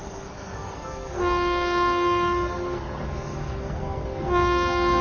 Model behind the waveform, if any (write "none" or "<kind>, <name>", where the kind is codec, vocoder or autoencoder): codec, SNAC